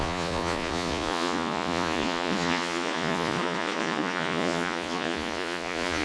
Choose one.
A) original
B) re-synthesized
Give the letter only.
B